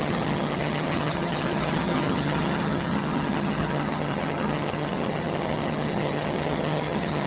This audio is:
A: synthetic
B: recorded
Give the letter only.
A